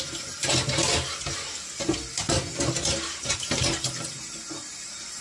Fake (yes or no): no